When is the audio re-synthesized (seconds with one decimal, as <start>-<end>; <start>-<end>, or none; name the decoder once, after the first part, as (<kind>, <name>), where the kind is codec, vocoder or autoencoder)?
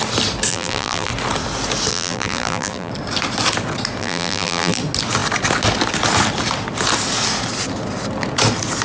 0.5-1.1 (vocoder, BigVGAN v2); 1.9-2.9; 4.0-4.8